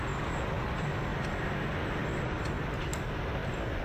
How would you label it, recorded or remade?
recorded